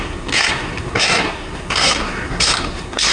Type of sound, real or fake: fake